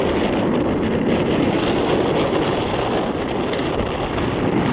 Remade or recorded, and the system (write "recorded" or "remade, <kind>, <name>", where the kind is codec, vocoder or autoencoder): recorded